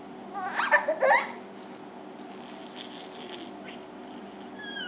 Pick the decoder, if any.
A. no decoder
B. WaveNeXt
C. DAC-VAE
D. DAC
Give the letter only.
A